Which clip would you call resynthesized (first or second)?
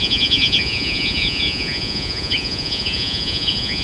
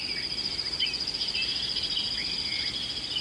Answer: first